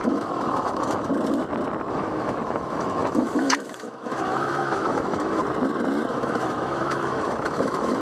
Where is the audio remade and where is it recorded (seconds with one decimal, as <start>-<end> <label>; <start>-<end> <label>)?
0.0-1.1 remade; 1.1-1.9 recorded; 1.9-5.4 remade; 5.4-6.1 recorded; 6.1-8.0 remade